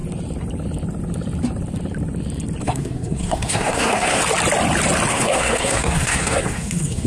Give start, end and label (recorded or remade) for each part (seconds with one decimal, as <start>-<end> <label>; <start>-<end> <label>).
0.0-2.6 recorded; 2.6-4.2 remade; 4.2-5.1 recorded; 5.1-7.1 remade